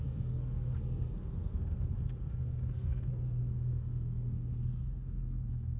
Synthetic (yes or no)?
yes